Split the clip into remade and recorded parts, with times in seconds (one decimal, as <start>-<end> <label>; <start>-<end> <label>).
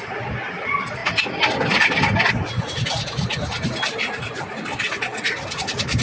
0.0-6.0 recorded